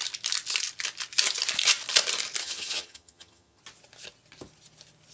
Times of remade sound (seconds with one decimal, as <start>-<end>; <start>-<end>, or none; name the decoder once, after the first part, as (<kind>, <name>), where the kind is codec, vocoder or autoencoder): 2.4-3.6 (vocoder, HiFi-GAN)

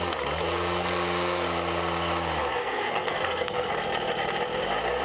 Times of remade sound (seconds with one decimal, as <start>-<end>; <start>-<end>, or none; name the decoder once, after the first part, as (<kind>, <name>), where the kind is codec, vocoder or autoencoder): 2.6-3.7 (codec, SNAC)

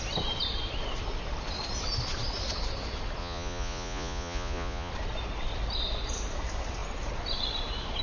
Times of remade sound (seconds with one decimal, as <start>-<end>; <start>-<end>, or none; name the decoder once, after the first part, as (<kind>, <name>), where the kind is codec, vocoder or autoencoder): 3.2-4.9 (vocoder, Vocos)